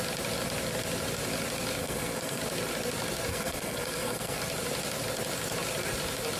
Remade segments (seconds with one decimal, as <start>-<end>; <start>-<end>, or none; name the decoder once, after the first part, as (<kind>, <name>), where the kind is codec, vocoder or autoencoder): 1.8-2.4 (codec, SNAC); 3.3-4.4